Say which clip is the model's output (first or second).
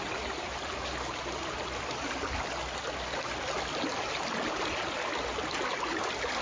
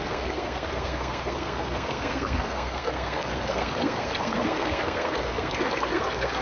second